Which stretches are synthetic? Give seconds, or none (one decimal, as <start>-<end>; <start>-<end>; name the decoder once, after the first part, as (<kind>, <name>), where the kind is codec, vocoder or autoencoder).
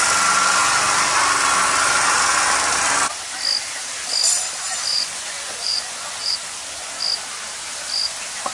4.9-7.0 (vocoder, Vocos)